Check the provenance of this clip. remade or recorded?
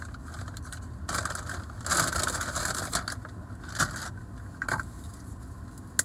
recorded